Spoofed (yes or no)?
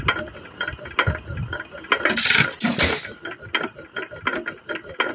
no